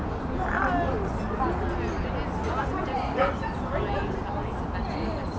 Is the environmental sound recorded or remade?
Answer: recorded